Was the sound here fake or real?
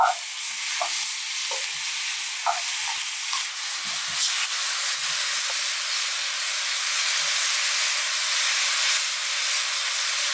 real